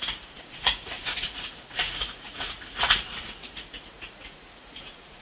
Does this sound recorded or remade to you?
remade